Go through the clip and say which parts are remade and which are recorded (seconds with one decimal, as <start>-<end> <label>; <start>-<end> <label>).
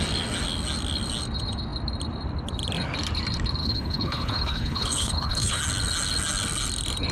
0.0-3.6 recorded; 3.6-5.6 remade; 5.6-7.1 recorded